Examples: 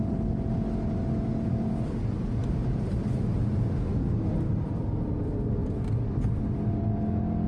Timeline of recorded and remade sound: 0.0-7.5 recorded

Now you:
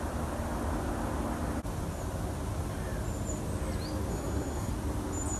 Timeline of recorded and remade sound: 0.0-4.1 recorded; 4.1-4.7 remade; 4.7-5.4 recorded

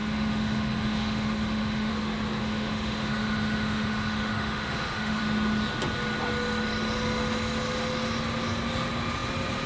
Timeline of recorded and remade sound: 0.0-1.9 remade; 1.9-2.4 recorded; 2.4-5.2 remade; 5.2-9.7 recorded

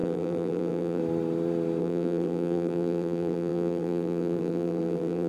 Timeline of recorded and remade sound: 0.0-1.0 remade; 1.0-1.8 recorded; 1.8-5.3 remade

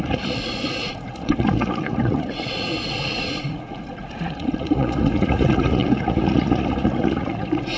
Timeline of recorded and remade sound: 0.0-7.8 remade

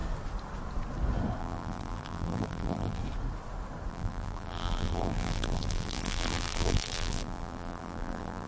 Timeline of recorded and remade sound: 0.0-1.4 recorded; 1.4-3.0 remade; 3.0-3.9 recorded; 3.9-8.5 remade

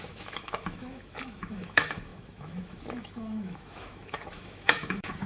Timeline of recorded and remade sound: 0.0-5.3 remade

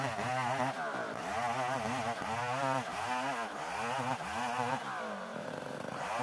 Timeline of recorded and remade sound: 0.0-5.3 recorded; 5.3-6.2 remade